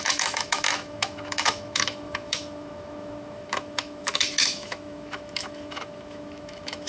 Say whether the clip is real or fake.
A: fake